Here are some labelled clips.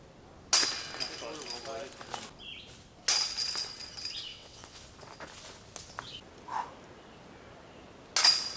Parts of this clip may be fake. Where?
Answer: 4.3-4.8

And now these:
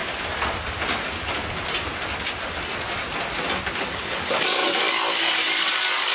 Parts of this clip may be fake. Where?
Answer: 3.7-6.1

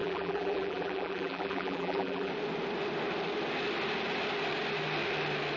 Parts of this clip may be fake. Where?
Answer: 0.0-2.3

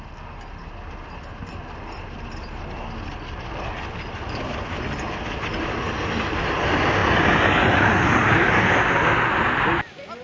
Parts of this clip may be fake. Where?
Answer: none

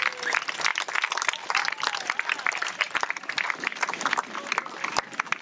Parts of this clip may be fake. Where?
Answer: none

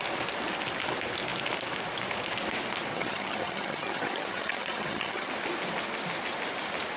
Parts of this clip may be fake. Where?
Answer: 2.9-5.3

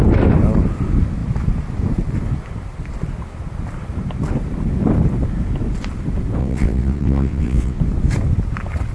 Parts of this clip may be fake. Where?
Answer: 6.4-7.8

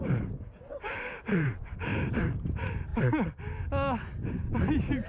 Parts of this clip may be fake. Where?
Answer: 0.0-2.9; 4.3-5.1